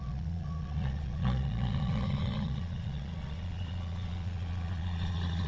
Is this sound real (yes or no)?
no